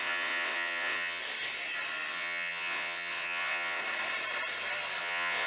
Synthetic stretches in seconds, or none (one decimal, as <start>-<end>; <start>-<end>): 0.0-1.2; 2.1-3.8; 5.0-5.5